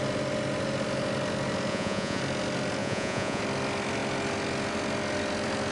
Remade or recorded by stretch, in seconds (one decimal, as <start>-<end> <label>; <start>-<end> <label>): 0.0-1.7 recorded; 1.7-2.2 remade; 2.2-2.8 recorded; 2.8-3.4 remade; 3.4-5.7 recorded